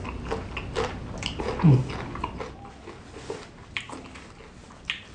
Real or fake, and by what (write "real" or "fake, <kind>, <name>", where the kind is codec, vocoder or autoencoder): real